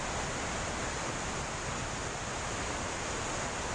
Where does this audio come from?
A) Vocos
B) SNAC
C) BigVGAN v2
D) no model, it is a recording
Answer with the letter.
D